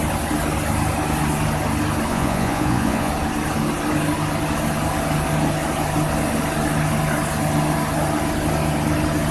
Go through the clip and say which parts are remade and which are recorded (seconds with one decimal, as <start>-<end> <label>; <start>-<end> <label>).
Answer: 0.0-2.1 recorded; 2.1-3.1 remade; 3.1-9.3 recorded